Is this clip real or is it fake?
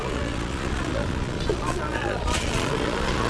fake